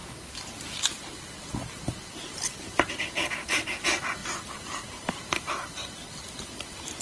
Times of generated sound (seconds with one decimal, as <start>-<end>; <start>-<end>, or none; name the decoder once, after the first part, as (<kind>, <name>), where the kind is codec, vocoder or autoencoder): 0.0-2.9 (vocoder, BigVGAN v2); 4.2-5.5